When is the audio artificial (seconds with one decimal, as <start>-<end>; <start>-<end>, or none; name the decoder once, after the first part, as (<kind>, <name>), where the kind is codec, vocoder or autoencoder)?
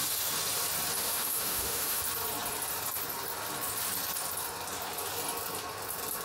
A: 1.0-2.0 (autoencoder, DAC-VAE)